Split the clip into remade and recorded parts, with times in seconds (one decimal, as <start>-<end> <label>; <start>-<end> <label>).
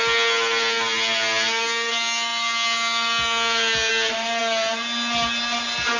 0.0-6.0 recorded